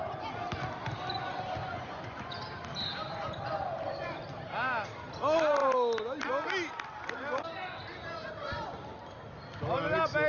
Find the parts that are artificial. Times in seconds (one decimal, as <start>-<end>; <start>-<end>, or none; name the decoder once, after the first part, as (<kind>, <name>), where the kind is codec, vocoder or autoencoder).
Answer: 1.6-2.3 (vocoder, Vocos)